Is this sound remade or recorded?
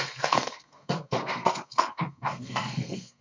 remade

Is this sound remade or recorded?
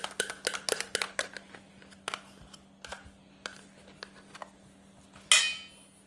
recorded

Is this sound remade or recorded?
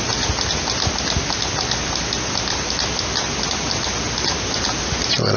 recorded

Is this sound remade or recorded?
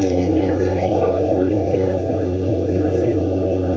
remade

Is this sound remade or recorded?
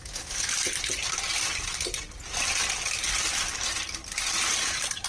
recorded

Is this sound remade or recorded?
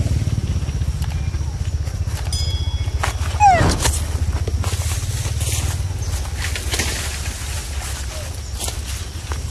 recorded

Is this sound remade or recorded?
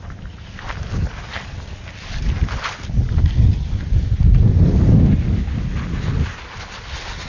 recorded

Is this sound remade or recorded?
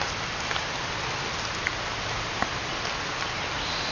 recorded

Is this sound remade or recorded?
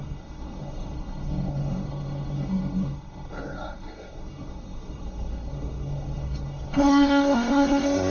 remade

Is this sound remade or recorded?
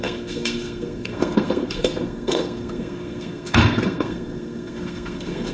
remade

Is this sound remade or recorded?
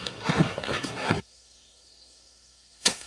remade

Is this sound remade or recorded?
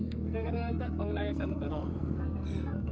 remade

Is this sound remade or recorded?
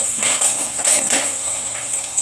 remade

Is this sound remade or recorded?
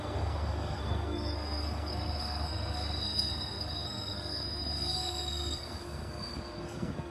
remade